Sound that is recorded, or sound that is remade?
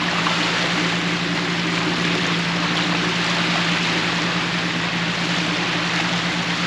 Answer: recorded